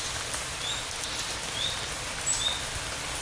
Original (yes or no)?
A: yes